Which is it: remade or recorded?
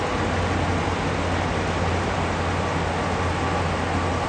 recorded